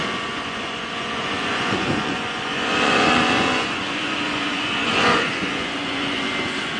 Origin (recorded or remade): remade